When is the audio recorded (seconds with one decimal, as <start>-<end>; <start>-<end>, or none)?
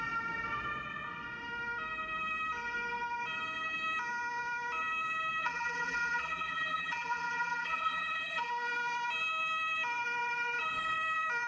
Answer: 0.0-5.4; 8.5-11.5